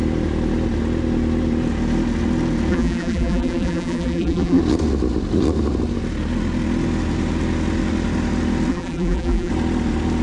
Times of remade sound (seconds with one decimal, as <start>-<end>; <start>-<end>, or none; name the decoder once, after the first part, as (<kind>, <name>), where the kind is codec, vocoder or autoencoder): 2.7-4.6 (vocoder, BigVGAN v2); 8.7-9.5